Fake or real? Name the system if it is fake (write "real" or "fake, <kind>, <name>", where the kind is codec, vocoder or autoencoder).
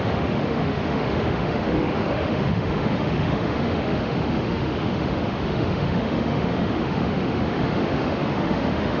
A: fake, autoencoder, DAC-VAE